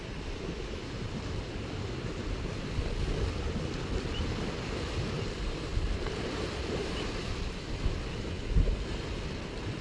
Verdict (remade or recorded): recorded